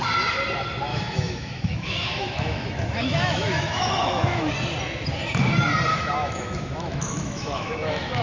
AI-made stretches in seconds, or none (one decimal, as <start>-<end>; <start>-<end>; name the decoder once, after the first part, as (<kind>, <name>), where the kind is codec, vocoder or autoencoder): 0.9-4.5 (autoencoder, DAC-VAE); 5.9-8.2